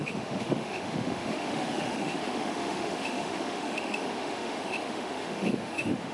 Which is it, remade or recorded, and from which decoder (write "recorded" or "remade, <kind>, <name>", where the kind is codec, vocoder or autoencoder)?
remade, autoencoder, DAC-VAE